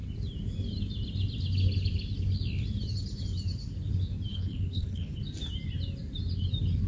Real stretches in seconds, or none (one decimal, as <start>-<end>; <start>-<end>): 0.0-4.3; 5.2-6.9